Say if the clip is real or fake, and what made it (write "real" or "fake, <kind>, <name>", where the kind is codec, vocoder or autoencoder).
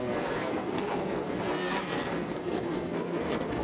fake, codec, SNAC